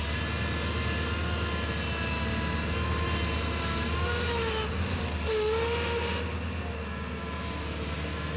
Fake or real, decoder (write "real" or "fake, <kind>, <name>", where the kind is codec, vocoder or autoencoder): real